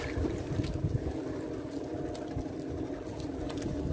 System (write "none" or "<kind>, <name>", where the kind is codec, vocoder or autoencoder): none